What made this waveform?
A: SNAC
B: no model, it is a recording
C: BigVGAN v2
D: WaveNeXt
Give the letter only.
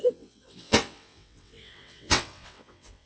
D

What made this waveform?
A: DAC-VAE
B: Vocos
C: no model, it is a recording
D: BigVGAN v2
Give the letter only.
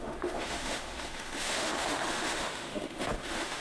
A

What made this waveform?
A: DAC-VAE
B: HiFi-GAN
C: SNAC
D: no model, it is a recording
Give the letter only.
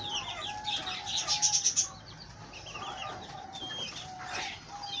D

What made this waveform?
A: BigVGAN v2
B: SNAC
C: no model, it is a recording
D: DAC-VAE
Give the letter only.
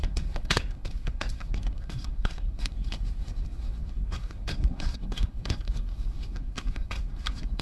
B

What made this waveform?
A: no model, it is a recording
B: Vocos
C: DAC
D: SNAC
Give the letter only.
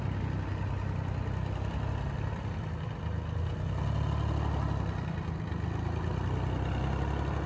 A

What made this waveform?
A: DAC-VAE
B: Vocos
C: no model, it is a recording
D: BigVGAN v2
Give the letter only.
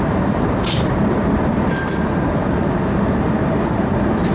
D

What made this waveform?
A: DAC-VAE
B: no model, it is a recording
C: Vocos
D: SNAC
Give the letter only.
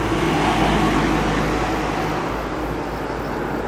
B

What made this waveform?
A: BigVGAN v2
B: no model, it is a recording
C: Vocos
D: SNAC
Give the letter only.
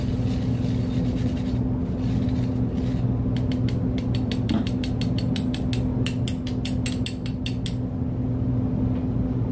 B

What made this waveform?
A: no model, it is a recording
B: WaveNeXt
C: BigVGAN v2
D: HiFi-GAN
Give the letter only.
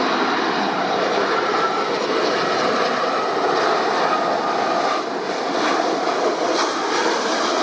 A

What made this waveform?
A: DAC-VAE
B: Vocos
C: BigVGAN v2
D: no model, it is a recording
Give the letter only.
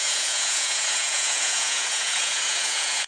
B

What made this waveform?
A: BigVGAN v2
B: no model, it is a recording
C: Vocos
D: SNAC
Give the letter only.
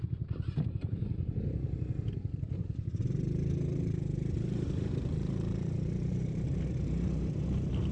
A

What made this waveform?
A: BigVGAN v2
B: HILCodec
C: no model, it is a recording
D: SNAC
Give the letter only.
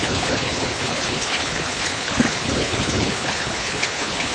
B